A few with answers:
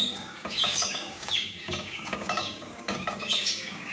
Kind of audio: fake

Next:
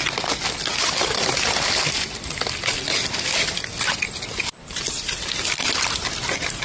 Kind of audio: real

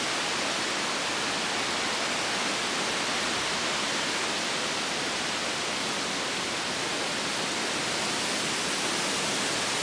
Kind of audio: real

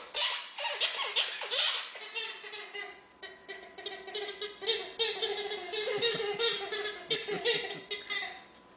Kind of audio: real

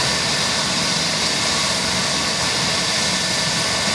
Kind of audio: real